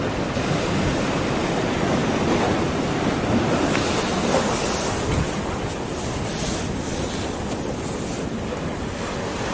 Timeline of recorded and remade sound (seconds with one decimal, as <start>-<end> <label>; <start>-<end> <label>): 0.0-9.5 recorded